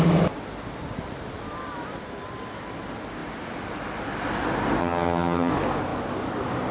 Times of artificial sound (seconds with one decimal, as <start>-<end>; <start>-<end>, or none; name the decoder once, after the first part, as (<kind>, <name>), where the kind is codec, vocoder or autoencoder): 4.8-5.5 (vocoder, HiFi-GAN)